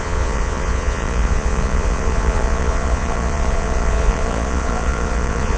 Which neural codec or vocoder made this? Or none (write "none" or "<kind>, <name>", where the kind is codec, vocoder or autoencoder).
vocoder, Vocos